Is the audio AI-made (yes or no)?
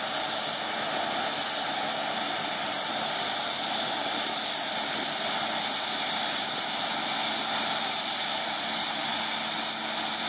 no